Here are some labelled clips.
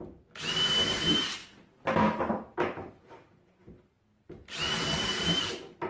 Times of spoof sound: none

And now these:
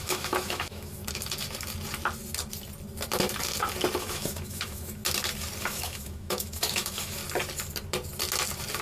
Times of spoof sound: 0.0-1.0 (autoencoder, DAC-VAE); 4.0-5.0; 5.6-7.2

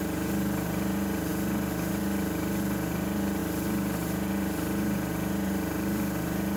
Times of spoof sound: 0.0-6.6 (vocoder, BigVGAN v2)